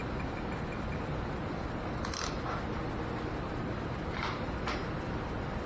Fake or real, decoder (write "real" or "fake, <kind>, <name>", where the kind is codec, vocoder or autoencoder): real